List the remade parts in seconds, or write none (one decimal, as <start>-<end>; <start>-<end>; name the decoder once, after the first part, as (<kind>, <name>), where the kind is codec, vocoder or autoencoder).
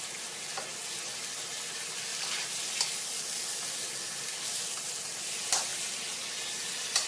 none